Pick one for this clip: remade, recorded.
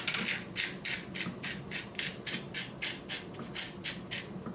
recorded